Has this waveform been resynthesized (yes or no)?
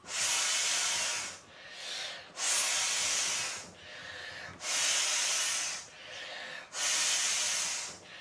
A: no